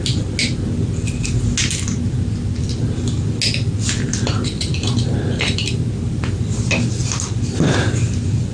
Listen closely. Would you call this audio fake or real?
real